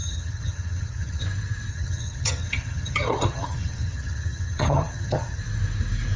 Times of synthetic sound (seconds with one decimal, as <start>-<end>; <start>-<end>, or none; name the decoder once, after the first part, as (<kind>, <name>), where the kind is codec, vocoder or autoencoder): 0.0-1.2 (vocoder, HiFi-GAN); 1.7-5.4